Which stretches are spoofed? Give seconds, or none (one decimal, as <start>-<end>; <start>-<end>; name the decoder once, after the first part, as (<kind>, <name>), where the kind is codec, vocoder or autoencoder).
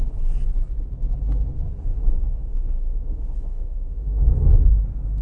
1.9-4.3 (autoencoder, DAC-VAE)